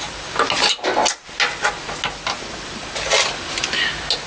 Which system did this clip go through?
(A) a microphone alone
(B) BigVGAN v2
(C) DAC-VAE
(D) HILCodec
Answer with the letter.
A